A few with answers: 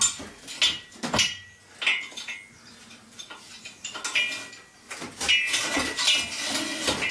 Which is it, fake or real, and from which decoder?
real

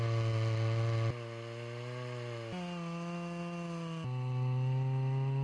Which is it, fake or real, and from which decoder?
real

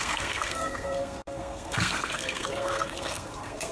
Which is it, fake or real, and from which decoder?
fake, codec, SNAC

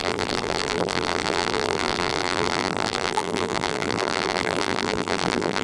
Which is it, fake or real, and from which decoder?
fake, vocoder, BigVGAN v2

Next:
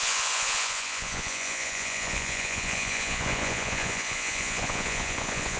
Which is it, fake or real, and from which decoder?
fake, vocoder, Vocos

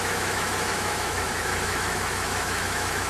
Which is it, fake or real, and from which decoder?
fake, autoencoder, DAC-VAE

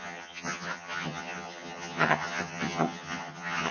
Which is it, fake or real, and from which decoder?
fake, vocoder, HiFi-GAN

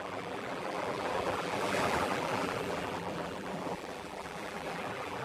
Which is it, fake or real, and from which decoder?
fake, vocoder, BigVGAN v2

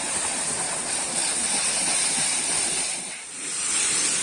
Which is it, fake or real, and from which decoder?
fake, vocoder, BigVGAN v2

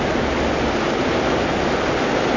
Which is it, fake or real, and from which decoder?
real